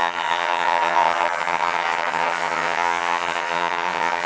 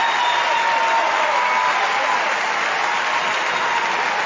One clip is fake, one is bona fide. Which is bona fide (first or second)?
second